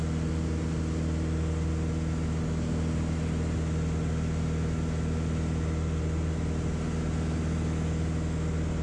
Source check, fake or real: real